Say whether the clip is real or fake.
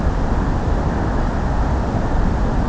real